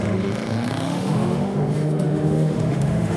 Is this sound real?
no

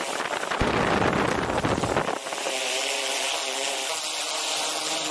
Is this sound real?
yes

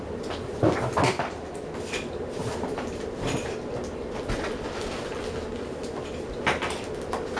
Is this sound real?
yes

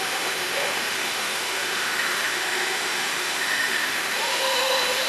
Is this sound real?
no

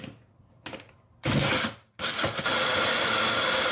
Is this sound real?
yes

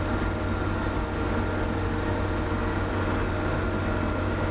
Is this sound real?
yes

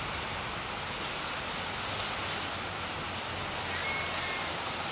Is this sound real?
yes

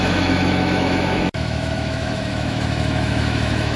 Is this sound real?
no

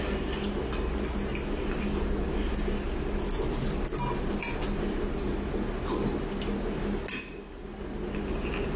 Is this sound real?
yes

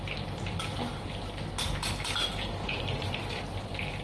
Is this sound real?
yes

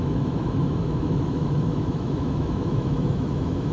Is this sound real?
no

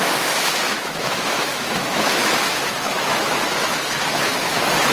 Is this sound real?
no